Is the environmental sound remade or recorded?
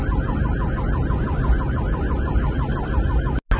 recorded